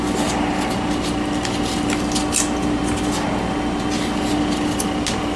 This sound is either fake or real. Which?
real